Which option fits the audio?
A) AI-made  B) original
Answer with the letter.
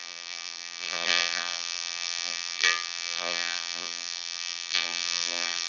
A